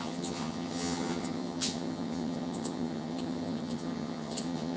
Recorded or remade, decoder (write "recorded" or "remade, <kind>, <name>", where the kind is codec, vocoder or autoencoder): remade, vocoder, HiFi-GAN